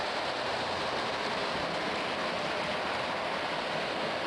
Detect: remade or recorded recorded